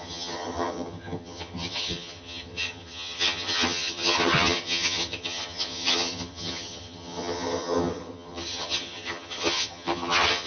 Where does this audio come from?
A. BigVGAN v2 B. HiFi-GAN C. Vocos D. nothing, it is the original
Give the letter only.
B